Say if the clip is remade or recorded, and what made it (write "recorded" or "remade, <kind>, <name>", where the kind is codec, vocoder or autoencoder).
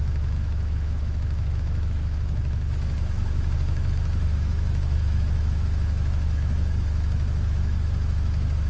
remade, autoencoder, DAC-VAE